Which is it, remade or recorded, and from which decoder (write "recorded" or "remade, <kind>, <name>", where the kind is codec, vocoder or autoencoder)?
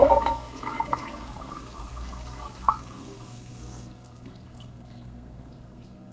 remade, codec, SNAC